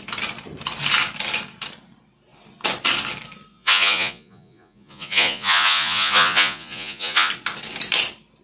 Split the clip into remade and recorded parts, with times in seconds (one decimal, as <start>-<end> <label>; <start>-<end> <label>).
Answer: 0.0-3.5 recorded; 3.5-7.3 remade; 7.3-8.4 recorded